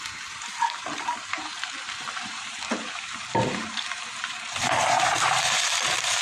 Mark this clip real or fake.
fake